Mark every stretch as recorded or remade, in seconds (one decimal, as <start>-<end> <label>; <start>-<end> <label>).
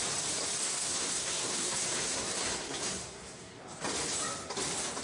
0.0-0.6 recorded; 0.6-3.6 remade; 3.6-5.0 recorded